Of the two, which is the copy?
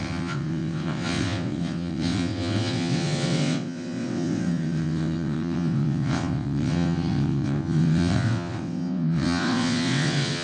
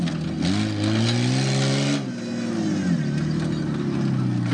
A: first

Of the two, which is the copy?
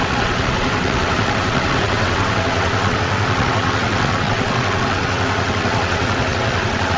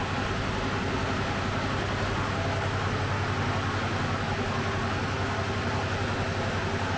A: first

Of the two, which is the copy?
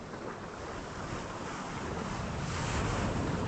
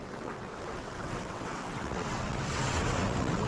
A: second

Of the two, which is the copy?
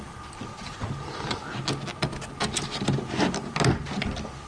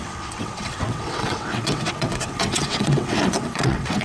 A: second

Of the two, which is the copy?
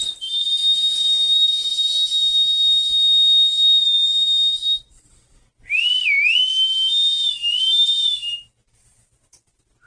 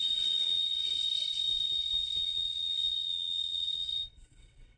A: second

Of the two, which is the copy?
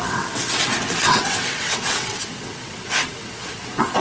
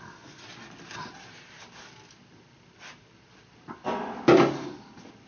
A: first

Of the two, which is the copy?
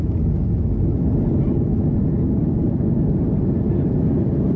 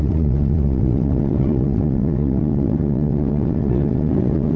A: second